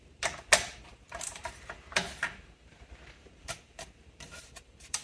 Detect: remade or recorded remade